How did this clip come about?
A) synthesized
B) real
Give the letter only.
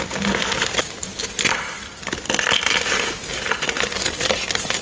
B